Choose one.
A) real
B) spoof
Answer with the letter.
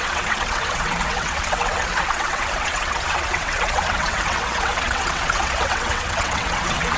B